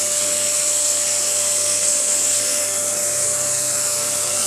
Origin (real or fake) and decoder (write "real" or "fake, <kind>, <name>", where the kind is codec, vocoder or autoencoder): fake, codec, SNAC